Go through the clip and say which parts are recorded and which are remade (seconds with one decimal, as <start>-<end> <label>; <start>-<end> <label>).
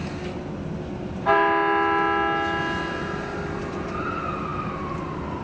0.0-5.4 recorded